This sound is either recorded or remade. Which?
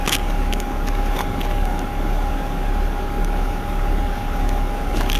remade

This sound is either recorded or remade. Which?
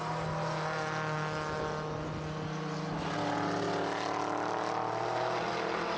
recorded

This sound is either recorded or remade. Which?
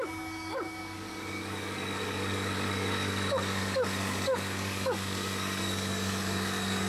remade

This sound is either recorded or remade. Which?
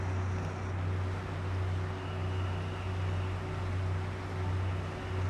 recorded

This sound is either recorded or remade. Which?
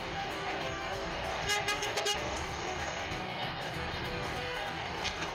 remade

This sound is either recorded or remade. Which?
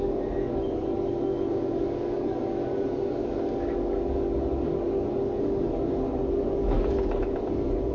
remade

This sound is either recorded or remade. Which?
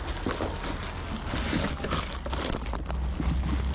recorded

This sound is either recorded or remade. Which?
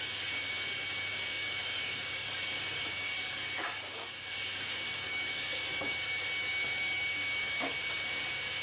remade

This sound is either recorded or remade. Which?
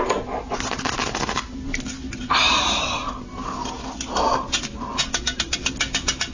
recorded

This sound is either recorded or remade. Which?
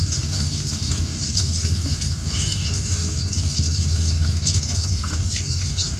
remade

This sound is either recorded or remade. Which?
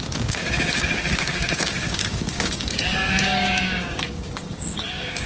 remade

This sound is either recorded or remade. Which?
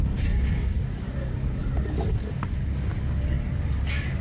remade